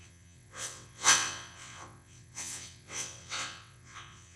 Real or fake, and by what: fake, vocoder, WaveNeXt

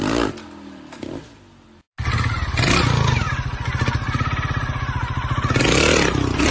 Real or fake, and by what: real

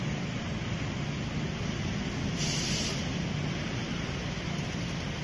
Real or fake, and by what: real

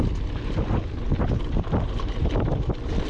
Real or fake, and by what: real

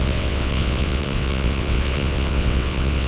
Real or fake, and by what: fake, vocoder, WaveNeXt